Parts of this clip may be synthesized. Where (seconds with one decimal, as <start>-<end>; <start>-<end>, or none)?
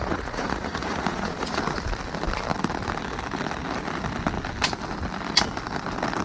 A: 0.0-1.6